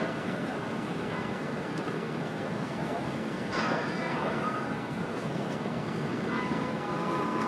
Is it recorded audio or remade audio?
remade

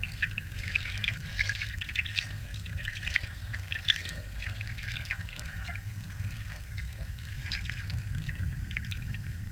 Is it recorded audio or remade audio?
remade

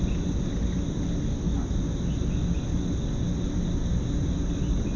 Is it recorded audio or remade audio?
recorded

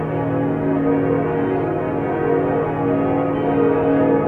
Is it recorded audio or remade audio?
recorded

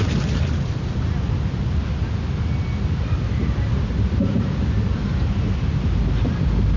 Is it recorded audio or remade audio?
recorded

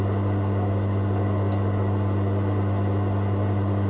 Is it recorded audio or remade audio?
recorded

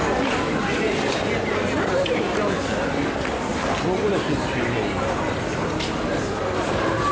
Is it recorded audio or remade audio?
recorded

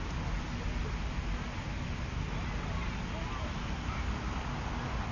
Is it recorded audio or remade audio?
recorded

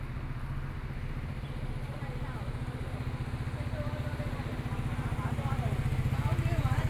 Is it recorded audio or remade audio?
recorded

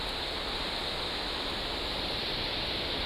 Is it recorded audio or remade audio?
recorded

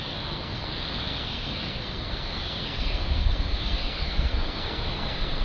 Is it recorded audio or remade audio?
remade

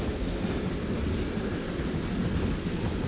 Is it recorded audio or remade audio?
recorded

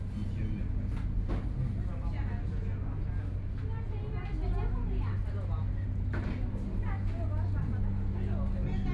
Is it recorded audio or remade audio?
recorded